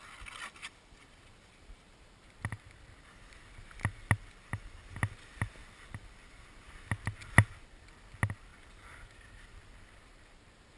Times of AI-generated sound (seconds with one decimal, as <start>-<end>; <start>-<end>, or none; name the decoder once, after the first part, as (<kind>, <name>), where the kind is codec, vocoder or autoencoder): 1.0-2.7 (vocoder, BigVGAN v2); 5.6-6.8; 8.5-10.2